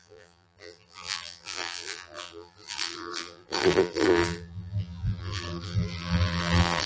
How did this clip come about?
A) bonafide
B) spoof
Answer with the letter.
B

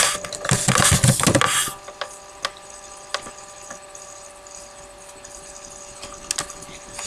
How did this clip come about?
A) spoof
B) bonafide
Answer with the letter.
B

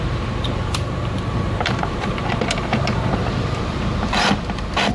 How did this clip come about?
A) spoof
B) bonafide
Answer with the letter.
A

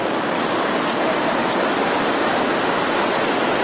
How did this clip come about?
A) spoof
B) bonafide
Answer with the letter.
B